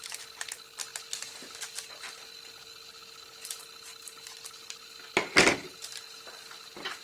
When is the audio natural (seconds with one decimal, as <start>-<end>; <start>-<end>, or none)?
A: 0.0-7.0